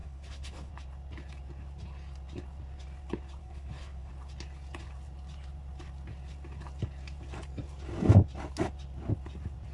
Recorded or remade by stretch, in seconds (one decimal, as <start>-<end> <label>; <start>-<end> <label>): 0.0-0.7 remade; 0.7-3.4 recorded; 3.4-4.1 remade; 4.1-9.7 recorded

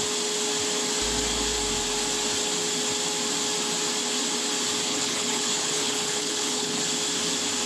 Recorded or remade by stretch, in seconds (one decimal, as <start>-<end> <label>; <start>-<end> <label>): 0.0-4.9 recorded; 4.9-6.8 remade; 6.8-7.7 recorded